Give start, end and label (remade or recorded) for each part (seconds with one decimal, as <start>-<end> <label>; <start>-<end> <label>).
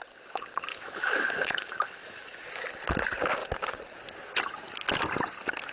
0.0-0.7 recorded; 0.7-2.6 remade; 2.6-5.7 recorded